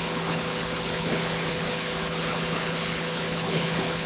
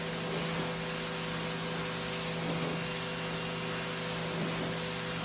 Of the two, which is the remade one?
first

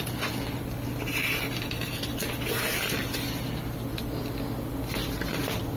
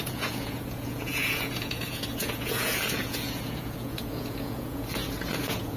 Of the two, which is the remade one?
second